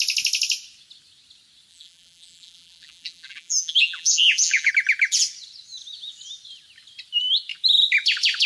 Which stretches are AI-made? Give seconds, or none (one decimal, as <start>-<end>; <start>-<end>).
1.7-4.7